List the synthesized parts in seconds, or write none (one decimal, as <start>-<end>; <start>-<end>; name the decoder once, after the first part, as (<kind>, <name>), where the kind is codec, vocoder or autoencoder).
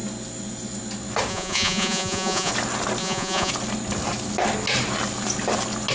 1.3-2.5 (vocoder, Vocos); 3.0-3.5